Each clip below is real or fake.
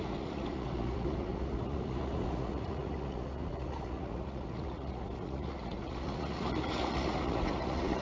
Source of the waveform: fake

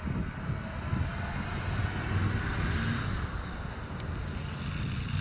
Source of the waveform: real